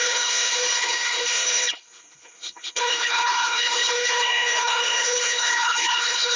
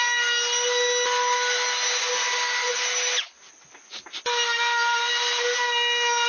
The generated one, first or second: first